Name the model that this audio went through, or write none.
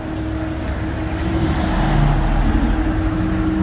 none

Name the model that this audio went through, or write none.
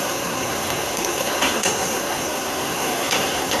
codec, SNAC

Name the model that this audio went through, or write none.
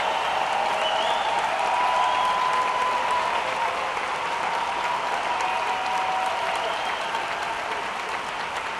none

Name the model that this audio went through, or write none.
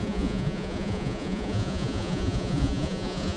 vocoder, Vocos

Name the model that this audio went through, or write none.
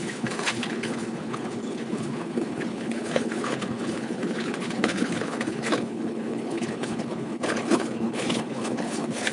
codec, HILCodec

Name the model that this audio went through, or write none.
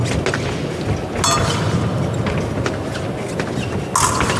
none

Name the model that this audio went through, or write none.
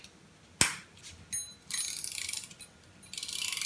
none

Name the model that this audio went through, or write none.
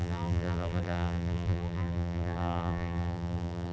vocoder, BigVGAN v2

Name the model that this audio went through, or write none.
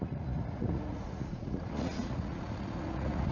vocoder, Vocos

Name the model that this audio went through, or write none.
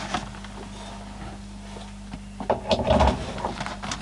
none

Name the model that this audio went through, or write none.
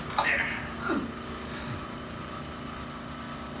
none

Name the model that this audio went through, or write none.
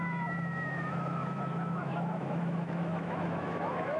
autoencoder, DAC-VAE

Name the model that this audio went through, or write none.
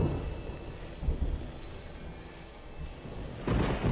none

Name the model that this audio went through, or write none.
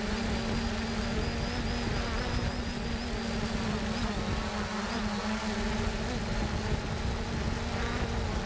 none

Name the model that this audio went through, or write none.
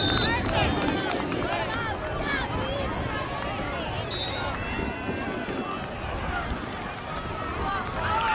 none